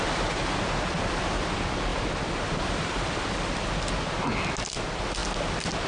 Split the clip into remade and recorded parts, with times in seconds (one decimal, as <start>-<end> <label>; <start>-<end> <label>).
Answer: 0.0-1.9 recorded; 1.9-3.7 remade; 3.7-5.9 recorded